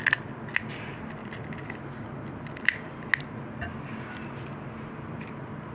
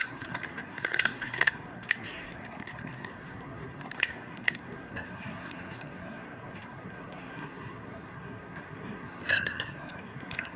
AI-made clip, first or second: second